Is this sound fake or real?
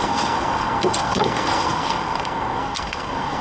fake